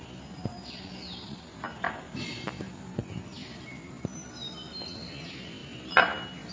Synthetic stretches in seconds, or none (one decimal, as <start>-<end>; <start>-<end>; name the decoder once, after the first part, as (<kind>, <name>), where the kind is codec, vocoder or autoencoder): 0.5-2.4 (vocoder, BigVGAN v2)